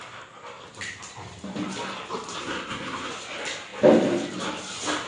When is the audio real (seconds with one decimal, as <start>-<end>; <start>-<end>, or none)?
0.0-2.4; 3.1-5.1